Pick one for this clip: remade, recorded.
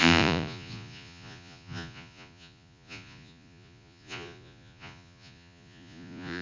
remade